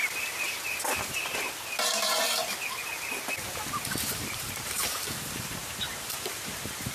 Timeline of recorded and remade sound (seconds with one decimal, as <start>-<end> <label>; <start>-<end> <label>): 0.0-4.0 recorded; 4.0-6.9 remade